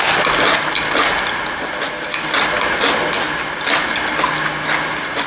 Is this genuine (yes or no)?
yes